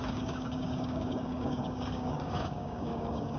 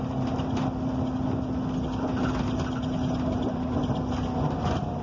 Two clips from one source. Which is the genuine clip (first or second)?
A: second